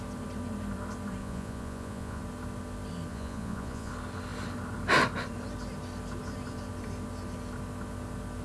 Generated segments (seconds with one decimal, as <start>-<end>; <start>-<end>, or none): 1.2-2.2; 3.1-3.9